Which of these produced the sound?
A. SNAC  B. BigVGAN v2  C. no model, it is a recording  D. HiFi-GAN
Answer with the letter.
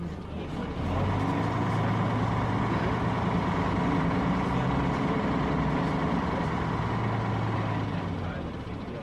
C